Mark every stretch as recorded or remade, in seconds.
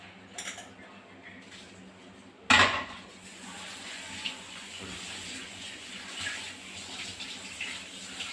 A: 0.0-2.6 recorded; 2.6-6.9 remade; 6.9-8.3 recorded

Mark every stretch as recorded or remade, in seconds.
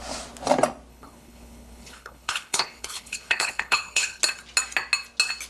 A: 0.0-0.9 recorded; 0.9-4.2 remade; 4.2-5.5 recorded